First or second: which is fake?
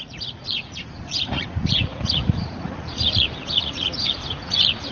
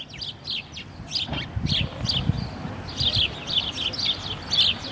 first